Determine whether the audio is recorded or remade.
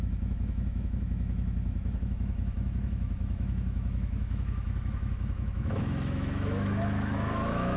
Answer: remade